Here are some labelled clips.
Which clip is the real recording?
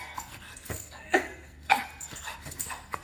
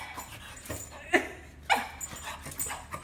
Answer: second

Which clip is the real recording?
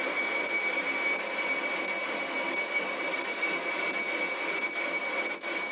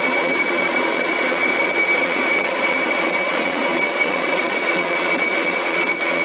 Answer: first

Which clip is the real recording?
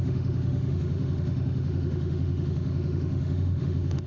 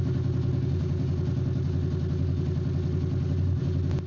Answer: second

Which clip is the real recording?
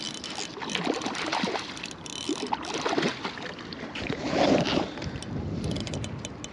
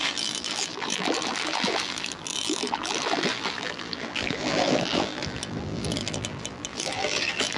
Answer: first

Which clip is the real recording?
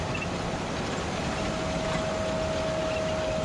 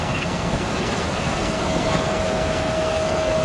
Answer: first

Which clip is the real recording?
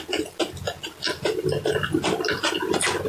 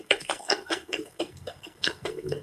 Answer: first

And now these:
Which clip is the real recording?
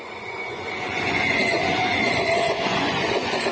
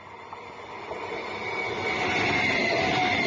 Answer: second